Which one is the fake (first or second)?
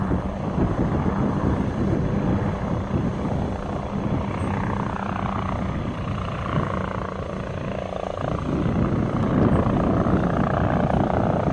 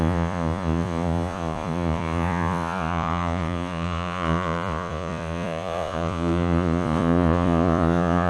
second